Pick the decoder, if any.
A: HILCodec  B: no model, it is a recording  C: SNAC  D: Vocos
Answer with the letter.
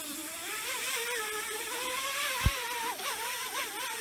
B